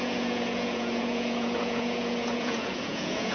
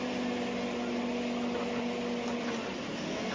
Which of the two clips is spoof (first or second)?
first